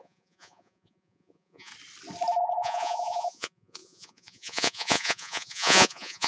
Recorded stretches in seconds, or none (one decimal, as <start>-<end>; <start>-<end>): 1.7-2.4